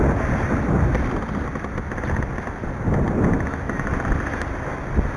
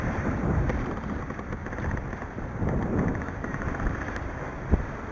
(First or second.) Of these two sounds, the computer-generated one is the second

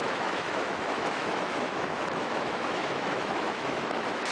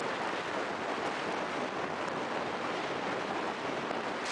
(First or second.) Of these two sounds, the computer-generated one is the first